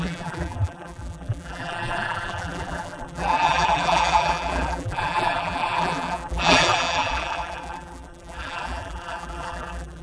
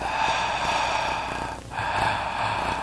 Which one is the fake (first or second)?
first